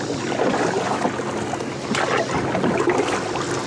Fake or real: real